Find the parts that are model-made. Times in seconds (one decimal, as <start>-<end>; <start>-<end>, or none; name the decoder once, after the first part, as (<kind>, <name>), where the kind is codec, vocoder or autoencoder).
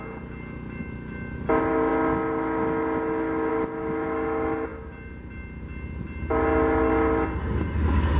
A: none